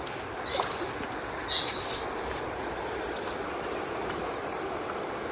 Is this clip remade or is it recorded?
recorded